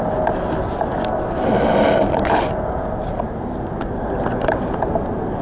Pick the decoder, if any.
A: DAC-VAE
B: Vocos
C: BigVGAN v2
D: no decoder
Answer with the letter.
D